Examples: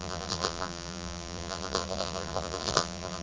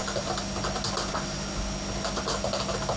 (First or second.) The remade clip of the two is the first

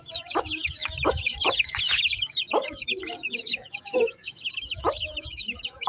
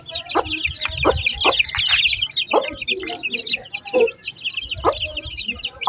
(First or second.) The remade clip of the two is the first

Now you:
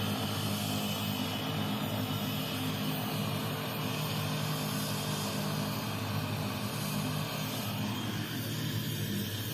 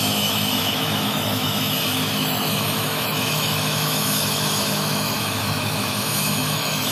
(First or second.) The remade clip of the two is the second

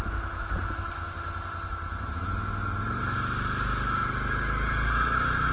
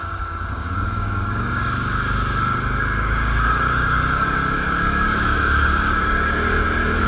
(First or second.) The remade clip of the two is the second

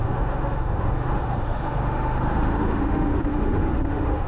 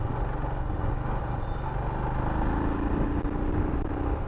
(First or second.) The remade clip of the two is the first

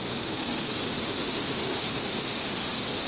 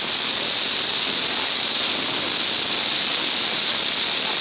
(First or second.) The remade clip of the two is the first